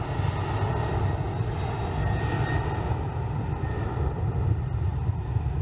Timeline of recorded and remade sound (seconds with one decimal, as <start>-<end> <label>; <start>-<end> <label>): 0.0-4.9 recorded; 4.9-5.6 remade